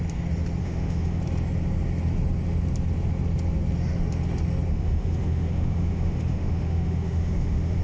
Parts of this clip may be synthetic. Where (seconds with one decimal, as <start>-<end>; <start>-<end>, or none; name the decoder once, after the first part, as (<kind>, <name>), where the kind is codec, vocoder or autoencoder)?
0.6-1.2 (autoencoder, DAC-VAE); 4.7-7.8